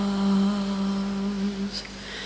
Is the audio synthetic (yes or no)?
no